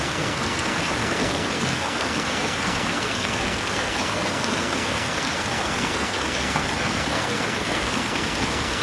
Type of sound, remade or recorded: remade